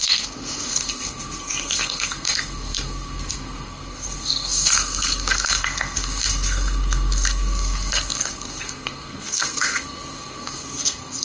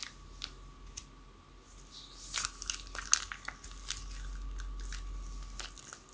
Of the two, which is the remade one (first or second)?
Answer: first